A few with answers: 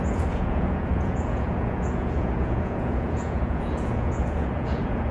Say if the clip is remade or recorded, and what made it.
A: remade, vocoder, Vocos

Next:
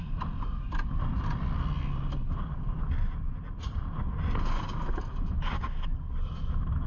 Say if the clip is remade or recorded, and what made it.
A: recorded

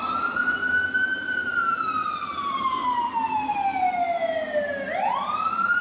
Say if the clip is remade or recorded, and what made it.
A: recorded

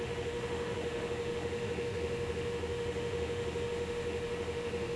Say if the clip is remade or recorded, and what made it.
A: remade, autoencoder, DAC-VAE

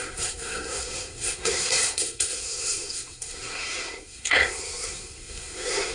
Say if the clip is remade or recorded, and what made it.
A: remade, codec, SNAC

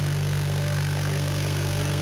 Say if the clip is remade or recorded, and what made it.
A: remade, codec, SNAC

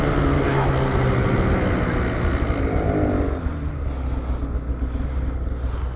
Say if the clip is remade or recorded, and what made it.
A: recorded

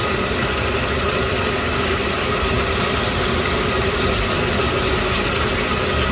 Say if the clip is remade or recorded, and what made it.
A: recorded